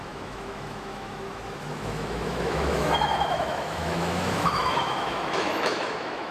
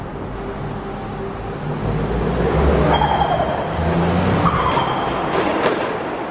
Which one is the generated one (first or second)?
first